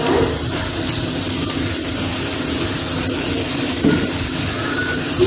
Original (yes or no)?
yes